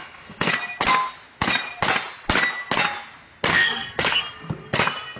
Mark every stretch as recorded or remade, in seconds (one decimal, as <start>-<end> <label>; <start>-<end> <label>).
0.0-0.5 remade; 0.5-3.5 recorded; 3.5-4.2 remade; 4.2-5.2 recorded